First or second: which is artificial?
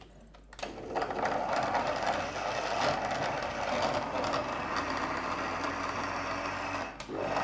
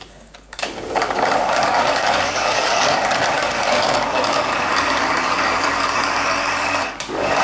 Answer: second